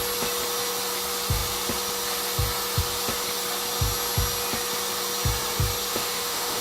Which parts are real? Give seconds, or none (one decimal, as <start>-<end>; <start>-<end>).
0.0-5.9

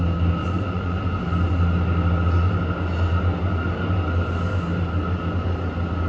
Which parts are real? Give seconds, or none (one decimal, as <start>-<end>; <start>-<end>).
0.0-0.4; 1.0-6.1

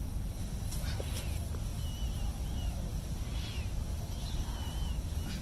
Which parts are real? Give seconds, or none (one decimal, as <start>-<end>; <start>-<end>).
0.0-5.4

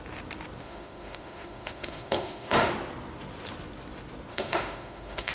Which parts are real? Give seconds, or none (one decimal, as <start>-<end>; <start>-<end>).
0.0-0.6; 2.7-4.3

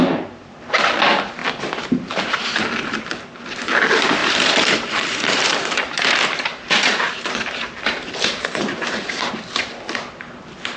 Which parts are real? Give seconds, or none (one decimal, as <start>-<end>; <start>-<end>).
0.0-4.2; 9.3-10.8